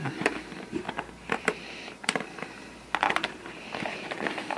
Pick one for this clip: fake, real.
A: fake